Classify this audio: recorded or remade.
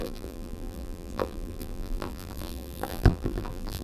remade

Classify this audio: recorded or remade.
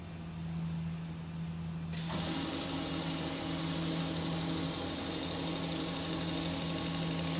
recorded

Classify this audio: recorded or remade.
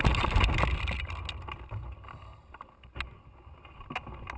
recorded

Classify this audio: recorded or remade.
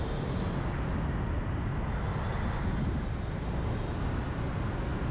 recorded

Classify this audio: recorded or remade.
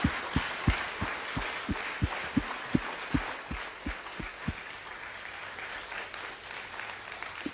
recorded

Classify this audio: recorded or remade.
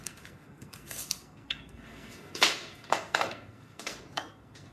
remade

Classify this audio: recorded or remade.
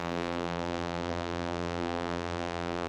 remade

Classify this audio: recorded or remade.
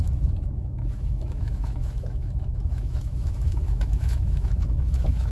remade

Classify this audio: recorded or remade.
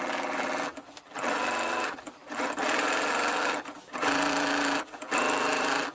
remade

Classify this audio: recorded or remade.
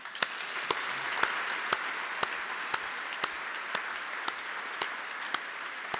recorded